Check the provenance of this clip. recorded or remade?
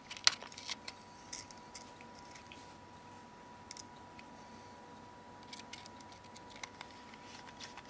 recorded